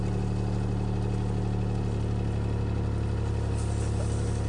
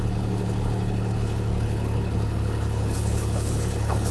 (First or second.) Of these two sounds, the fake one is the second